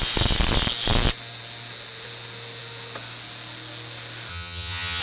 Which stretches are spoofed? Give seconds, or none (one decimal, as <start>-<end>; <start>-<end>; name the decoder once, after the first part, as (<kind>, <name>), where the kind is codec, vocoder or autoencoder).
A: 4.3-5.0 (vocoder, HiFi-GAN)